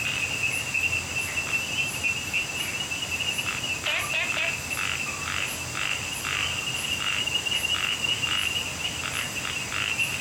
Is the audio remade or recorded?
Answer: recorded